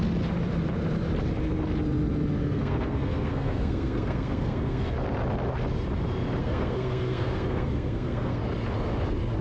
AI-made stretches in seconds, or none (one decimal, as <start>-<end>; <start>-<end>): 2.4-4.9; 6.4-8.4